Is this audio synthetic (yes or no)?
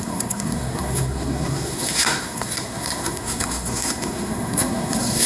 yes